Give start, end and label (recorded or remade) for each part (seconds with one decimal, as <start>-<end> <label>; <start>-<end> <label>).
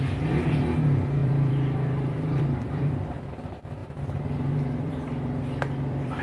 0.0-1.2 recorded; 1.2-3.4 remade; 3.4-3.8 recorded; 3.8-6.2 remade